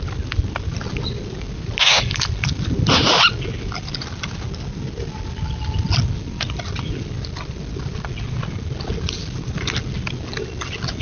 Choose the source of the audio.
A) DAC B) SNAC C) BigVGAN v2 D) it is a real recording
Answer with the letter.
D